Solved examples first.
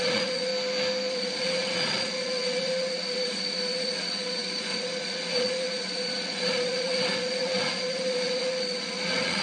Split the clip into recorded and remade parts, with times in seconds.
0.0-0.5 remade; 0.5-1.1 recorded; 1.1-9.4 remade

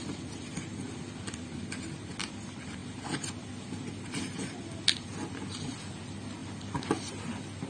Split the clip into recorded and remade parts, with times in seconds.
0.0-7.7 recorded

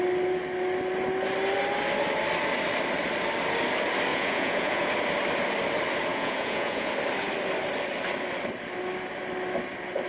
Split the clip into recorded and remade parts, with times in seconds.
0.0-4.1 recorded; 4.1-4.9 remade; 4.9-6.1 recorded; 6.1-6.9 remade; 6.9-10.1 recorded

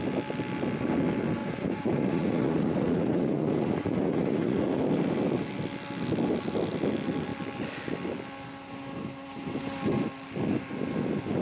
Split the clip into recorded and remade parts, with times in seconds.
0.0-1.4 recorded; 1.4-4.8 remade; 4.8-11.4 recorded

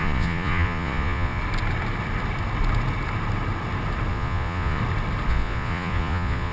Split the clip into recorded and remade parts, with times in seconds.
0.0-1.4 remade; 1.4-4.1 recorded; 4.1-4.8 remade; 4.8-5.3 recorded; 5.3-6.5 remade

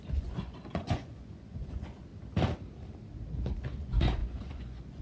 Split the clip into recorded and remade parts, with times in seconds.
0.0-2.1 remade; 2.1-3.8 recorded; 3.8-5.0 remade

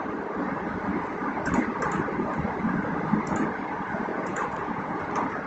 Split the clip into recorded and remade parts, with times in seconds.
0.0-4.1 recorded; 4.1-5.1 remade; 5.1-5.5 recorded

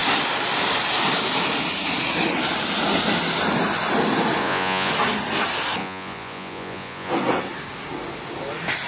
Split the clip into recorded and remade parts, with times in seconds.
0.0-4.4 recorded; 4.4-4.9 remade; 4.9-5.8 recorded; 5.8-7.1 remade; 7.1-8.9 recorded